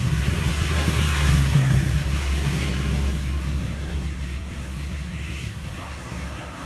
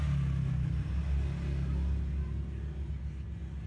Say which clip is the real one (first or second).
second